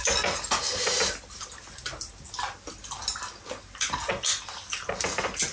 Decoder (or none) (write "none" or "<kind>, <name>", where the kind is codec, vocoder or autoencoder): none